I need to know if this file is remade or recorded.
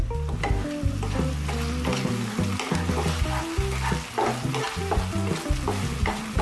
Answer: recorded